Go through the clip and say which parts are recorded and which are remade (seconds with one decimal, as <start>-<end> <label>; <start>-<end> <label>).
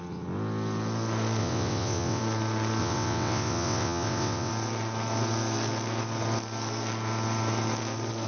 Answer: 0.0-1.4 recorded; 1.4-2.2 remade; 2.2-2.8 recorded; 2.8-4.5 remade; 4.5-8.3 recorded